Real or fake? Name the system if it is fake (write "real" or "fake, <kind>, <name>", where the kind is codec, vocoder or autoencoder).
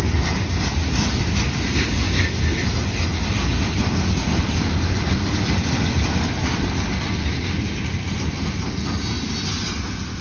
real